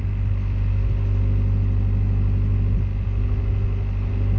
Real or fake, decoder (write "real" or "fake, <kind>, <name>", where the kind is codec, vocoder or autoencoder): real